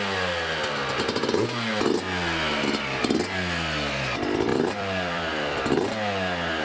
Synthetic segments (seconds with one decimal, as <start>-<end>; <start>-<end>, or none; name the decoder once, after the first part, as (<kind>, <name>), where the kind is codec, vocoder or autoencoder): 4.5-5.6 (vocoder, BigVGAN v2)